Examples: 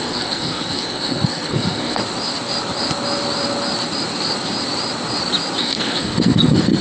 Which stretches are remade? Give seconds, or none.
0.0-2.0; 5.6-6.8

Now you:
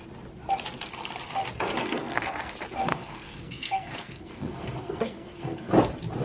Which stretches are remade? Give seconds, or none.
1.8-2.5; 2.9-5.7

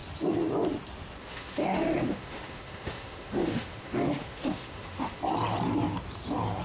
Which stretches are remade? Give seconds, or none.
1.2-5.2

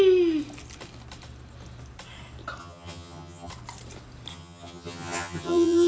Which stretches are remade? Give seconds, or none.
2.6-3.5; 4.3-5.9

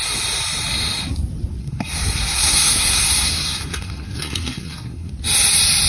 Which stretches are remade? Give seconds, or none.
1.6-5.1